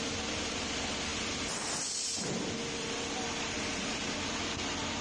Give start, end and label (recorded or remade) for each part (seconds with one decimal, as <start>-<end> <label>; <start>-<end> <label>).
0.0-1.1 recorded; 1.1-4.1 remade; 4.1-5.0 recorded